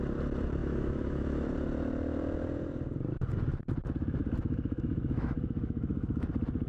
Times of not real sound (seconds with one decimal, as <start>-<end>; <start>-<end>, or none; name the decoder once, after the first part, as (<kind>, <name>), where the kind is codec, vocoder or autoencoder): 0.6-1.5 (autoencoder, DAC-VAE); 4.2-6.3